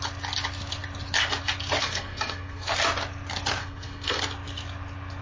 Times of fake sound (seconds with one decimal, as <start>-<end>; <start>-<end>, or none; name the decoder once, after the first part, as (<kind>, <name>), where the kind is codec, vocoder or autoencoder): 1.8-2.7 (codec, SNAC); 3.6-4.2